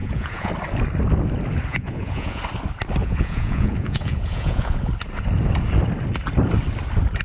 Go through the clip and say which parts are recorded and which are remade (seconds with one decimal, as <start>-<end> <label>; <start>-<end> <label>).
0.0-0.5 remade; 0.5-1.7 recorded; 1.7-2.4 remade; 2.4-3.0 recorded; 3.0-4.9 remade; 4.9-7.2 recorded